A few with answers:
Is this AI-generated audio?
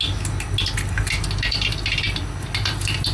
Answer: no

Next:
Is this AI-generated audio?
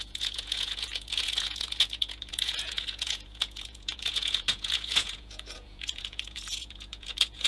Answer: yes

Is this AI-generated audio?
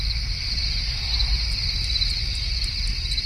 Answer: no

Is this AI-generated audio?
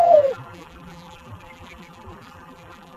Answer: yes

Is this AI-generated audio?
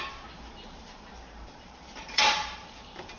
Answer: yes